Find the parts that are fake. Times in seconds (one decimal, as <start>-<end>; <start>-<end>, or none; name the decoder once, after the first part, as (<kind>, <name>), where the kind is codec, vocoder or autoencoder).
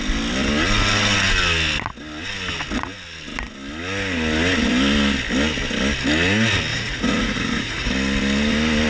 6.7-7.9 (vocoder, Vocos)